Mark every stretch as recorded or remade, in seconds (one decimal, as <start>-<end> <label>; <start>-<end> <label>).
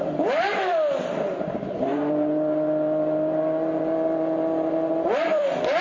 0.0-5.8 remade